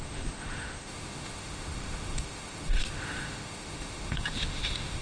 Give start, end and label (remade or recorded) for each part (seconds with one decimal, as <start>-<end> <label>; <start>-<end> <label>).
0.0-5.0 remade